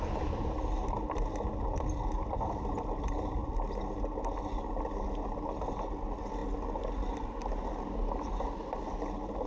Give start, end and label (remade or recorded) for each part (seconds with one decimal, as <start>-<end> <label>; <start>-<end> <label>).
0.0-9.5 recorded

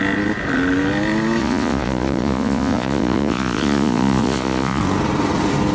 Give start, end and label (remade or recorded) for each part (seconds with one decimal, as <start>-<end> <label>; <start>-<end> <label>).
0.0-1.4 recorded; 1.4-4.8 remade; 4.8-5.7 recorded

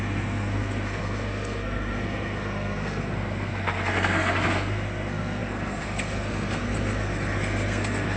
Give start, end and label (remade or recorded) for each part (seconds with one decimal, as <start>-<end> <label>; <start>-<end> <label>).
0.0-8.2 remade

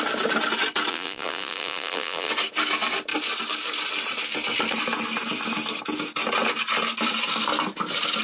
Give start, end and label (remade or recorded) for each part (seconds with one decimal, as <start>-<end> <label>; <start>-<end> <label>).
0.0-0.9 recorded; 0.9-2.3 remade; 2.3-8.2 recorded